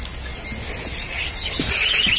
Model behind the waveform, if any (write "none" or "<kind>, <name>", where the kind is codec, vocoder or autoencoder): none